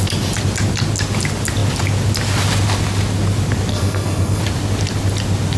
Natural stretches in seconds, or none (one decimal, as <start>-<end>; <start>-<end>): 0.0-3.7; 4.4-5.6